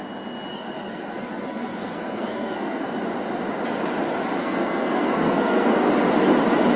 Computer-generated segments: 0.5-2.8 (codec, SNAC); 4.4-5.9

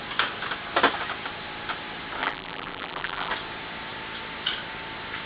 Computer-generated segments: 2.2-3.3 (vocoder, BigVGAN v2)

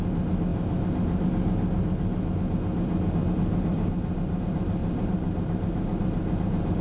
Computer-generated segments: 3.7-4.3 (vocoder, BigVGAN v2); 4.8-6.8

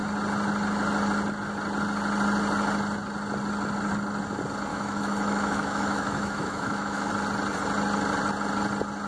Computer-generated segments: 4.7-7.1 (autoencoder, DAC-VAE)

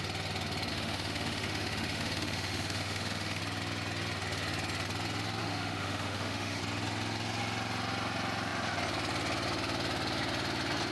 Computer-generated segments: 0.7-3.4 (autoencoder, DAC-VAE); 5.4-6.6